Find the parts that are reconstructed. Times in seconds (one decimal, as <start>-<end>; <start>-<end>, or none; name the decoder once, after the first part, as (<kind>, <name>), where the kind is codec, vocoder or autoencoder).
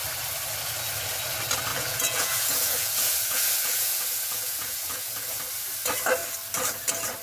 1.7-5.4 (vocoder, Vocos)